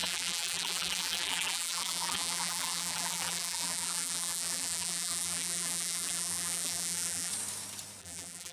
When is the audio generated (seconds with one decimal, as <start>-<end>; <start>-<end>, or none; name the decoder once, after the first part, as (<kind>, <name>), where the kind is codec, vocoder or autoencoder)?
0.0-7.3 (vocoder, BigVGAN v2); 8.0-8.5